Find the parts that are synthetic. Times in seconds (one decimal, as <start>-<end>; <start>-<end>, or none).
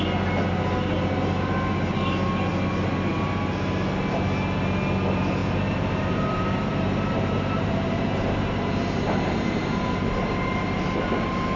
5.4-9.9